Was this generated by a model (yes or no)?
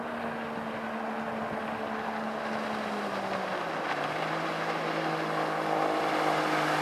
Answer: no